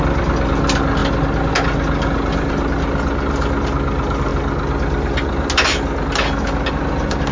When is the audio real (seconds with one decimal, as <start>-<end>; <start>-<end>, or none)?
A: 0.0-7.3